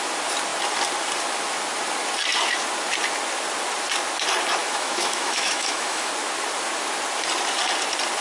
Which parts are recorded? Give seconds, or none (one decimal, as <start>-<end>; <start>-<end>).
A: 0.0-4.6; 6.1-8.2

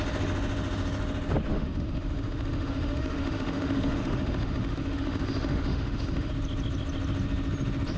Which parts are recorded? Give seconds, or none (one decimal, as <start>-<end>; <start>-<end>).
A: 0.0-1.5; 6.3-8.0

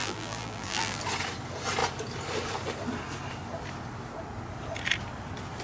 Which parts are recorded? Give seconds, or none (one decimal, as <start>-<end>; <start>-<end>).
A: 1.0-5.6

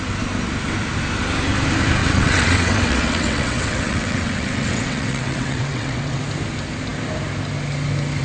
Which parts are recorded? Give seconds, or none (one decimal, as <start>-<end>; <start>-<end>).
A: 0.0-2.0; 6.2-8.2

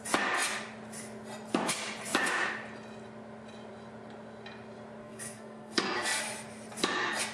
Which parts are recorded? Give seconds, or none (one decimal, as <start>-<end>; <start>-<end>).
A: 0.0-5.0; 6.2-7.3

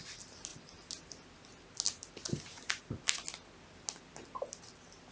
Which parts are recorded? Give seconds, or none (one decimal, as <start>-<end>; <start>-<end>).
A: 0.0-5.1

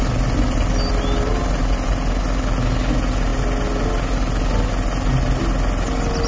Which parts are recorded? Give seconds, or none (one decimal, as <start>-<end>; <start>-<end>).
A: 0.0-6.3